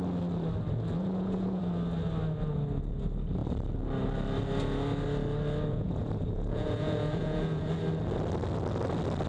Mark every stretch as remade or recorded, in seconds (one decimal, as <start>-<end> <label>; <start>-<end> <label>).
0.0-1.0 recorded; 1.0-1.6 remade; 1.6-5.7 recorded; 5.7-7.7 remade; 7.7-9.3 recorded